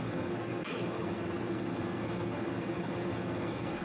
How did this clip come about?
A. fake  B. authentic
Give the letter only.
A